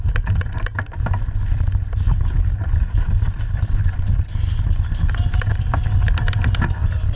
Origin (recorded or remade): recorded